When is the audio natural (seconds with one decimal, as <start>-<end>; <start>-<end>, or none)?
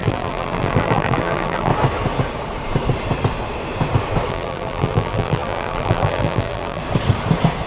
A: 1.7-4.3; 6.8-7.7